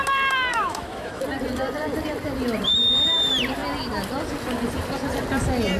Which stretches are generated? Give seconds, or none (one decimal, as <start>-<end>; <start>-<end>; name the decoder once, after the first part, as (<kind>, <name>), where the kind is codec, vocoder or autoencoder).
0.5-1.2 (autoencoder, DAC-VAE)